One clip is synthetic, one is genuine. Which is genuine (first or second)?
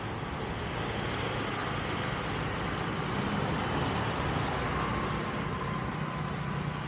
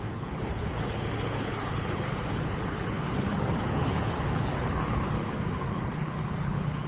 first